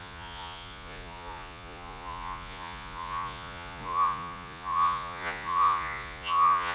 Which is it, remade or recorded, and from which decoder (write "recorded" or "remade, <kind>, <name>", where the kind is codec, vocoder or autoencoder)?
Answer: remade, vocoder, Vocos